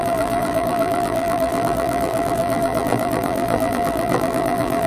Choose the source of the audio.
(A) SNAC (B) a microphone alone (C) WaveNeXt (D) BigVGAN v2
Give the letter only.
D